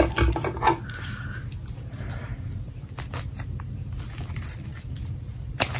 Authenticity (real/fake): real